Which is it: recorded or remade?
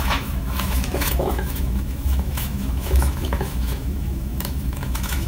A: remade